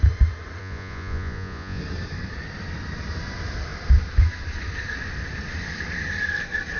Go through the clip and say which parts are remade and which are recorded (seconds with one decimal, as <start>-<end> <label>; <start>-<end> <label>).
0.0-0.6 recorded; 0.6-1.8 remade; 1.8-6.8 recorded